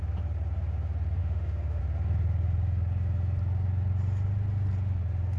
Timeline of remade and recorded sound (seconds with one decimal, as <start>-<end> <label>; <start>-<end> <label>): 0.0-1.2 recorded; 1.2-1.8 remade; 1.8-5.4 recorded